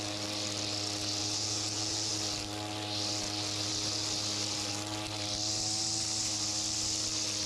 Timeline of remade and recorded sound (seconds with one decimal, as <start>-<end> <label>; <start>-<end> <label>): 0.0-1.2 recorded; 1.2-2.1 remade; 2.1-7.5 recorded